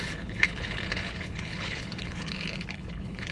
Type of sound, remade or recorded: remade